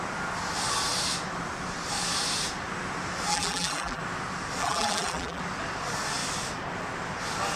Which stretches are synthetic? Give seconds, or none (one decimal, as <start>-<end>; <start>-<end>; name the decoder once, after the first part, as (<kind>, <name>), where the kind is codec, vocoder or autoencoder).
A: 3.3-4.0 (vocoder, BigVGAN v2); 4.6-5.4